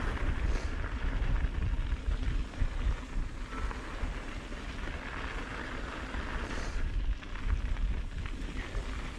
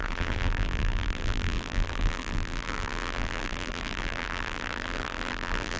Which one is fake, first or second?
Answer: second